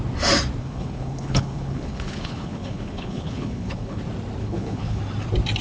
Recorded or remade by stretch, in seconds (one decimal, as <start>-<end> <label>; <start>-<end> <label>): 0.0-0.6 recorded; 0.6-4.0 remade; 4.0-4.4 recorded; 4.4-5.0 remade; 5.0-5.6 recorded